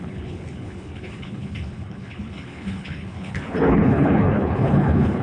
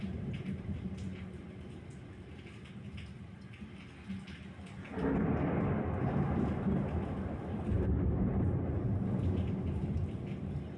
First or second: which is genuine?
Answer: second